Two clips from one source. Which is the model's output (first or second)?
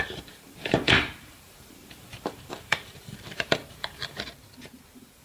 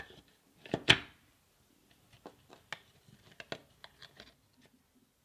first